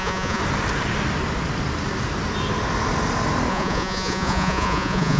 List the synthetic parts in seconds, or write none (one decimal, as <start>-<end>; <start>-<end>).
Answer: 0.0-0.4; 3.5-5.2